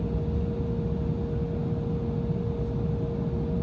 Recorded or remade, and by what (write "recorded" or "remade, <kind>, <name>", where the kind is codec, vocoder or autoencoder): recorded